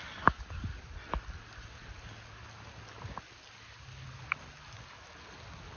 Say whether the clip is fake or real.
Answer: real